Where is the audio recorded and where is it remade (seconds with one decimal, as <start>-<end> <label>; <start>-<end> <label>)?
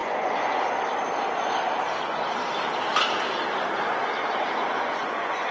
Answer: 0.0-0.6 remade; 0.6-4.2 recorded; 4.2-5.5 remade